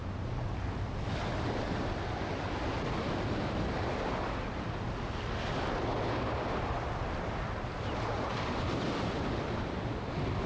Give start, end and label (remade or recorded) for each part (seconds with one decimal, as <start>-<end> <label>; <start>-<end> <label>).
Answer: 0.0-10.5 recorded